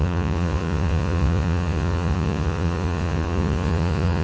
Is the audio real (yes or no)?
no